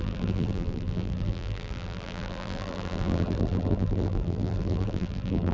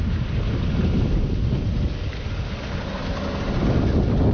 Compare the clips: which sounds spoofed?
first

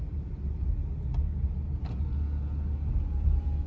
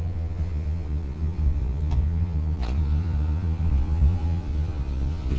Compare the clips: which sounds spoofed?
second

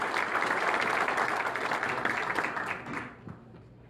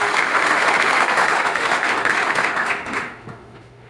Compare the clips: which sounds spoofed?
second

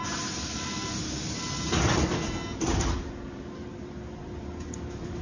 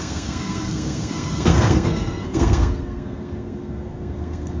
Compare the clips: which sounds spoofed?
second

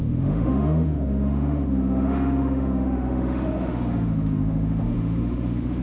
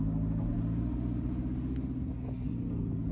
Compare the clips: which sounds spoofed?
first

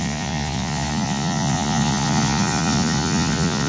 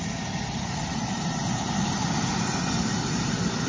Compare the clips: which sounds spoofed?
first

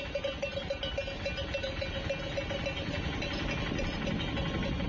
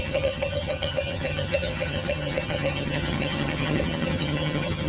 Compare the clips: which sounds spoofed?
second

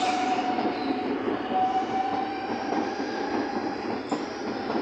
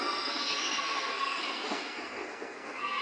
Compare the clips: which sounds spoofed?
second